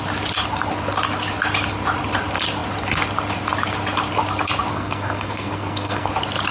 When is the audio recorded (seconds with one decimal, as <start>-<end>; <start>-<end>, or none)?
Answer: 0.0-4.7; 6.1-6.5